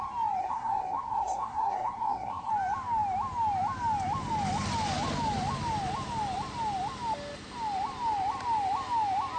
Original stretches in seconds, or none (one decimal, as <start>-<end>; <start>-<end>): 0.0-0.4; 2.5-9.4